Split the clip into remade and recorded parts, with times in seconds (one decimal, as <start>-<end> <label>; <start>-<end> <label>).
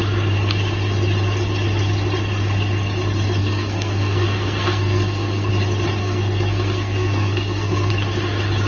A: 0.0-3.4 recorded; 3.4-5.5 remade; 5.5-6.0 recorded; 6.0-7.9 remade; 7.9-8.7 recorded